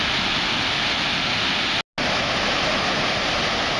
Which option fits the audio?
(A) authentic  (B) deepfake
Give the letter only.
A